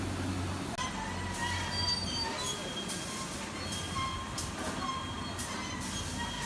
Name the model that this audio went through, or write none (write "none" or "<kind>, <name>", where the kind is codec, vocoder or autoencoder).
none